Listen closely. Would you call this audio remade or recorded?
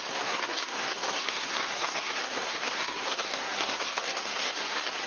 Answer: remade